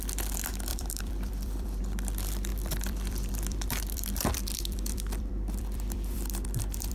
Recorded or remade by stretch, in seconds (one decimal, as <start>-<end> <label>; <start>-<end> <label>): 0.0-0.7 recorded; 0.7-1.8 remade; 1.8-2.5 recorded; 2.5-6.9 remade